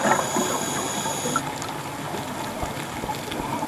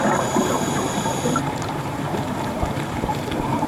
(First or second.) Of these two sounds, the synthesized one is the second